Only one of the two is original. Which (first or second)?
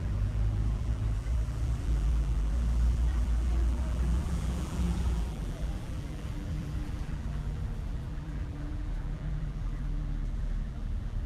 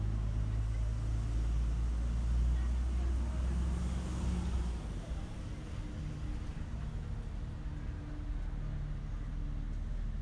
second